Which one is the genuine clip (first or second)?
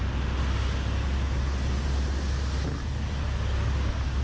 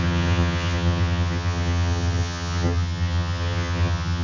first